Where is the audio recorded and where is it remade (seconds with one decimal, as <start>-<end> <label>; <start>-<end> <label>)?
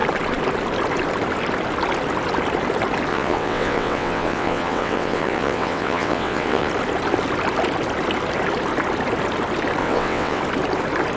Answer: 0.0-3.1 recorded; 3.1-6.7 remade; 6.7-9.8 recorded; 9.8-10.4 remade; 10.4-11.2 recorded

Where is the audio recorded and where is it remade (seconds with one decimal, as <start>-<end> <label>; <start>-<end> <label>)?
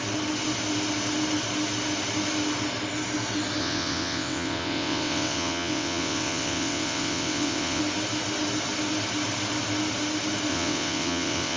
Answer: 0.0-3.6 recorded; 3.6-7.8 remade; 7.8-10.5 recorded; 10.5-11.6 remade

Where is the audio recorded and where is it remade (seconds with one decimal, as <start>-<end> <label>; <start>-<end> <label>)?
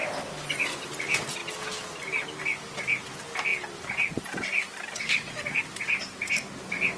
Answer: 0.0-7.0 recorded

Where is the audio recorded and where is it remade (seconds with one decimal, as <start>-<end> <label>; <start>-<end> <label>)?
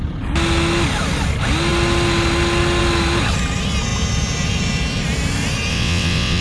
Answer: 0.0-5.7 recorded; 5.7-6.4 remade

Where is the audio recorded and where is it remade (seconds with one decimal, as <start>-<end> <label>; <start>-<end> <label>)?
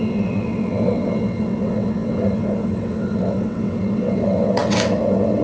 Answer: 0.0-5.4 remade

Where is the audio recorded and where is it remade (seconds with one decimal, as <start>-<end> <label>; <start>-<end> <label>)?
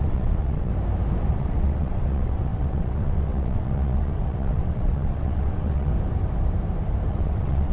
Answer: 0.0-0.7 remade; 0.7-1.3 recorded; 1.3-5.9 remade; 5.9-7.1 recorded; 7.1-7.7 remade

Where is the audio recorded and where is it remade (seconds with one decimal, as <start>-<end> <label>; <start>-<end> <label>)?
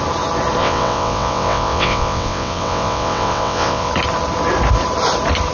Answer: 0.0-0.6 recorded; 0.6-3.9 remade; 3.9-5.5 recorded